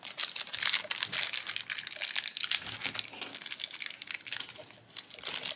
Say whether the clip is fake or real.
real